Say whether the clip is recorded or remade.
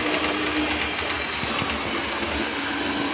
recorded